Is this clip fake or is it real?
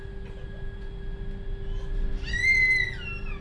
real